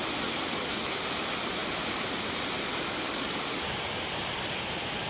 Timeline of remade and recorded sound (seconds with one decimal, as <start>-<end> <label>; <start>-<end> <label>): 0.0-5.1 recorded